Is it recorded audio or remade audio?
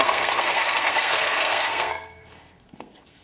remade